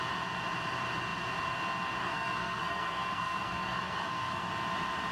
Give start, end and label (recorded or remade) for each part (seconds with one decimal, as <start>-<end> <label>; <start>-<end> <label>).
0.0-2.0 recorded; 2.0-4.5 remade; 4.5-5.1 recorded